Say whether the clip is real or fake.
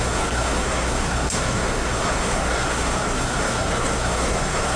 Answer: fake